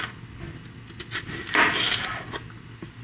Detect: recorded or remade recorded